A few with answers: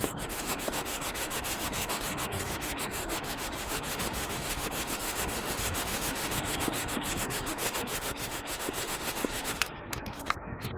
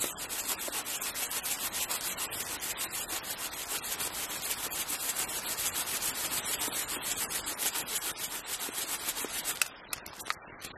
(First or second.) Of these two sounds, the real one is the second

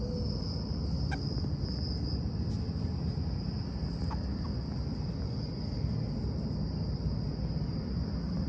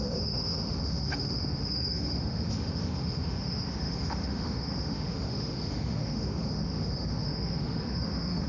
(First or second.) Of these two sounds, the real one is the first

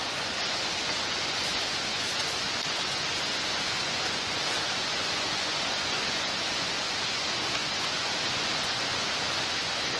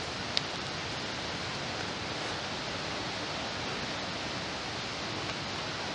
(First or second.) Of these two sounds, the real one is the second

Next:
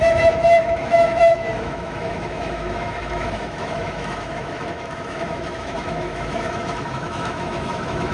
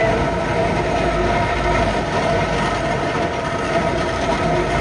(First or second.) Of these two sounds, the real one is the second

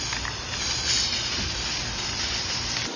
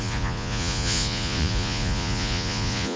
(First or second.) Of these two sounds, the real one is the first